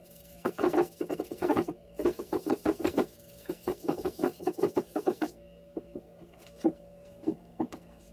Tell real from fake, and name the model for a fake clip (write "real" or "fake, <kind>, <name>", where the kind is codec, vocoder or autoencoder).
fake, codec, SNAC